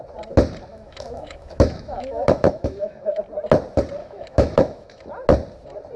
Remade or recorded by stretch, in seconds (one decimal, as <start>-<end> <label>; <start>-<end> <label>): 0.0-0.7 recorded; 0.7-3.2 remade; 3.2-4.0 recorded; 4.0-5.1 remade; 5.1-6.0 recorded